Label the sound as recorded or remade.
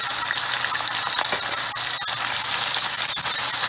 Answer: recorded